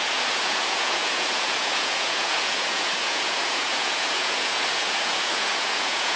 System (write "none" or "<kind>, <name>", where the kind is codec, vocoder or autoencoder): vocoder, Vocos